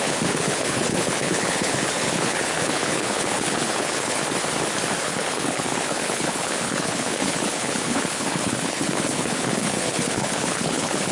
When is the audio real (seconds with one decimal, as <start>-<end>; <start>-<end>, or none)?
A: 4.2-5.0